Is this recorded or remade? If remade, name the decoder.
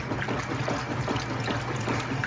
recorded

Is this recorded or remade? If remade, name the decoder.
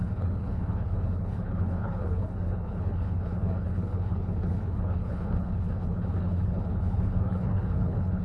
remade, codec, HILCodec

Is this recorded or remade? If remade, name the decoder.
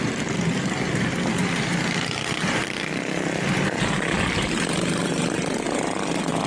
recorded